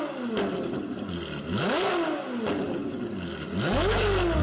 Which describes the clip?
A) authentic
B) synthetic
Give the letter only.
A